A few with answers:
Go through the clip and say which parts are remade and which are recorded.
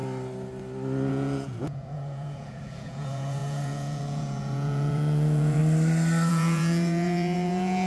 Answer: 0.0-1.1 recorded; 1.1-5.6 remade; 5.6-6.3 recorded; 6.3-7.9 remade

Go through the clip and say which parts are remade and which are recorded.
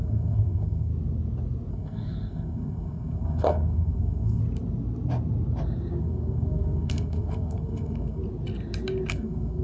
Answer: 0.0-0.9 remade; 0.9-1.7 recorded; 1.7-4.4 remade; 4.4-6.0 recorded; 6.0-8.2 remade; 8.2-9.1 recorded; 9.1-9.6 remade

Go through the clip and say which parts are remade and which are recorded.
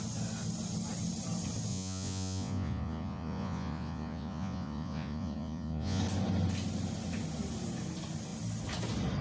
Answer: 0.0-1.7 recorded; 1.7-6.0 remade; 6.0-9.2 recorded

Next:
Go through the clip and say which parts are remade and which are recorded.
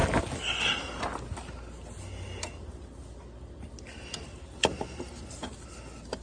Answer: 0.0-6.2 recorded